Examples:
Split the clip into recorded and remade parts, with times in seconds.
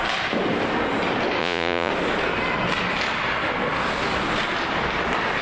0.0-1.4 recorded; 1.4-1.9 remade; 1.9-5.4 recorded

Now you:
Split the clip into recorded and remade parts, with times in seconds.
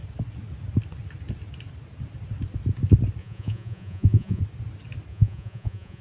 0.0-3.2 recorded; 3.2-4.4 remade; 4.4-5.1 recorded; 5.1-6.0 remade